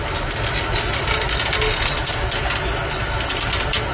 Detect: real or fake real